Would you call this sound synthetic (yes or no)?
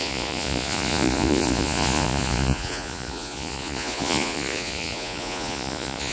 yes